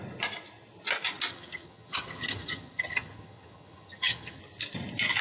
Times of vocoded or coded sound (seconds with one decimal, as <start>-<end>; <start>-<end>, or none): 1.3-4.4